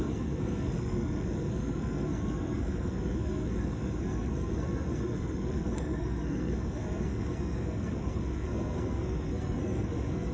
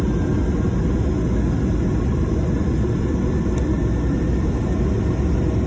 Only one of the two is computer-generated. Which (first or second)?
first